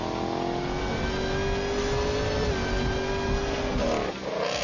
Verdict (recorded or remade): recorded